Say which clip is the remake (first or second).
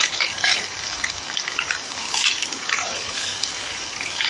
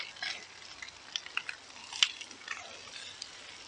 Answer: first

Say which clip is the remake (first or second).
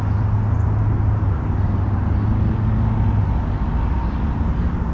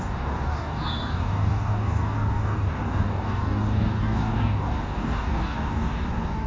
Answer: second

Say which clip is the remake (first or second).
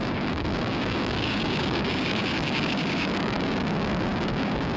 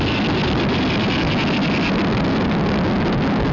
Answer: first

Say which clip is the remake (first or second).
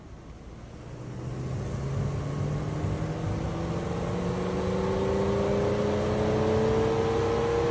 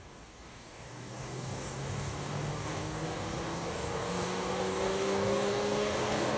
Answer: second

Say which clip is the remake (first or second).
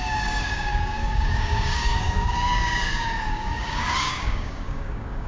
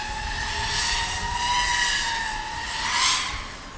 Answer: first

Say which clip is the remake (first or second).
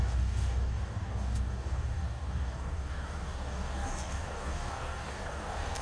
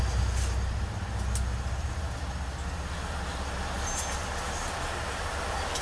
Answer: first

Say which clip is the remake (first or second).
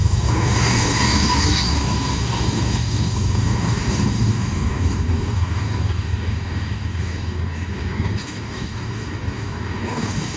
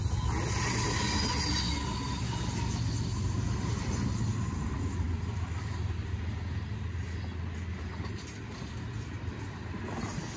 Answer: first